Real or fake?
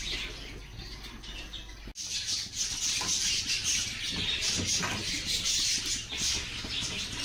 real